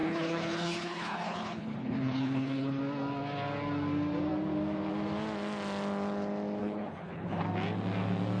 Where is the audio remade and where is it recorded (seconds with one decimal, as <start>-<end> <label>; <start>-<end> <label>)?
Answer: 0.0-2.8 remade; 2.8-6.6 recorded; 6.6-7.4 remade; 7.4-8.4 recorded

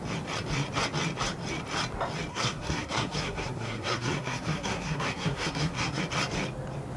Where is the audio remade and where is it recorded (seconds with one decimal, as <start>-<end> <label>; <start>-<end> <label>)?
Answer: 0.0-2.3 recorded; 2.3-6.0 remade; 6.0-7.0 recorded